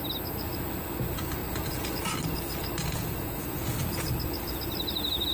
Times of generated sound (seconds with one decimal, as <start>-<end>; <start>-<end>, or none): 1.4-1.9; 2.8-3.8